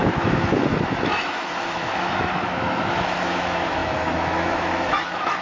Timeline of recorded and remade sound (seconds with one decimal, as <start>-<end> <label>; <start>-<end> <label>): 0.0-5.4 remade